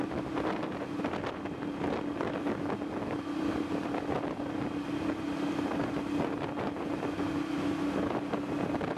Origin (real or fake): real